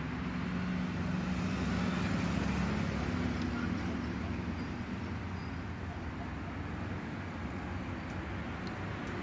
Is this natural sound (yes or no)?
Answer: yes